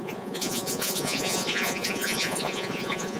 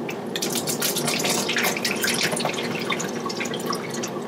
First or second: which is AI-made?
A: first